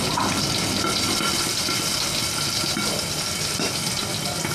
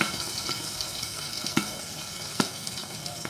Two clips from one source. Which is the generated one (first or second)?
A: second